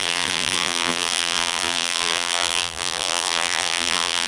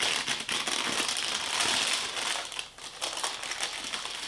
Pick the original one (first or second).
second